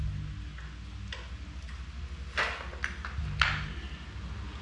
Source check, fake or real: real